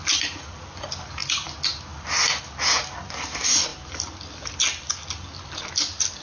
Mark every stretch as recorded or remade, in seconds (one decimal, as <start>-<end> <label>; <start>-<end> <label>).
0.0-6.2 recorded